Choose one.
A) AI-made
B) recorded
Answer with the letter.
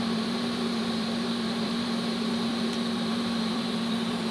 A